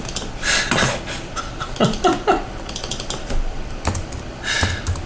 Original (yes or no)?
yes